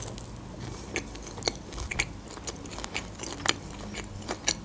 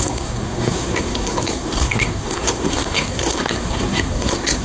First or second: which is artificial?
second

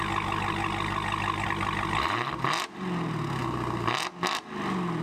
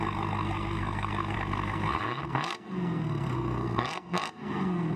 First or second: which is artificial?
second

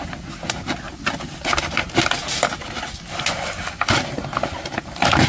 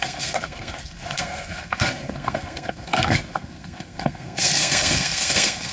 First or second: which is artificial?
second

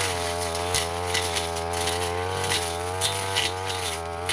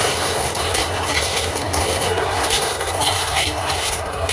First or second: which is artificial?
second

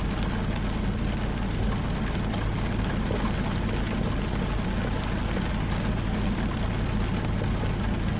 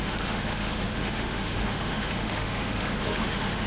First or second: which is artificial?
second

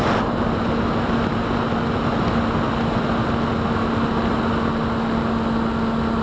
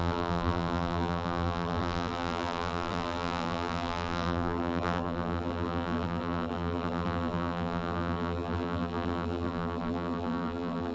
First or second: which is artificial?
second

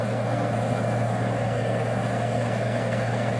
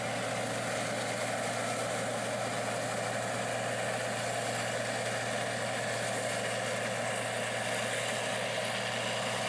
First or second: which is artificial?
first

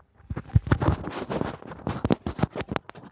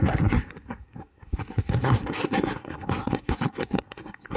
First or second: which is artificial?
second